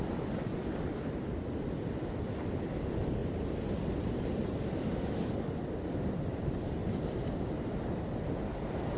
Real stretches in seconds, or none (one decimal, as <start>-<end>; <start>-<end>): 3.2-6.1; 6.8-9.0

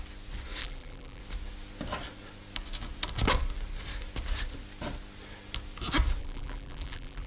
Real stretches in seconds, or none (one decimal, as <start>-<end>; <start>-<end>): 0.0-0.6; 1.2-6.2

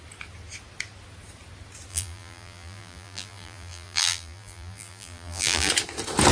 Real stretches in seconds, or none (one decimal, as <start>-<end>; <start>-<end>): 0.0-1.9; 5.7-6.3

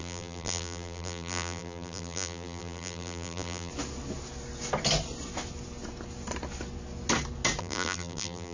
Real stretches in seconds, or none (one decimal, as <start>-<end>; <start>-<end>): 3.7-7.6

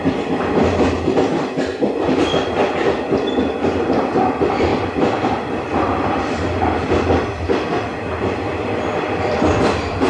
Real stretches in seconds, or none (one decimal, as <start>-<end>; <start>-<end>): none

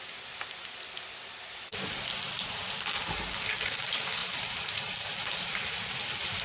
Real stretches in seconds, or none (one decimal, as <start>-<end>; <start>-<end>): 0.0-4.2